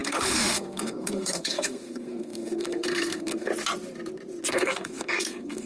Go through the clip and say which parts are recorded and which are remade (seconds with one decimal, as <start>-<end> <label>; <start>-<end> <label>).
0.0-3.5 remade; 3.5-4.5 recorded; 4.5-5.7 remade